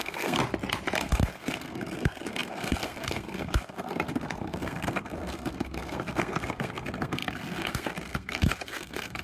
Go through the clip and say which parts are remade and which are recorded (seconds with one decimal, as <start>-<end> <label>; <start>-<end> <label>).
0.0-0.4 remade; 0.4-1.0 recorded; 1.0-9.2 remade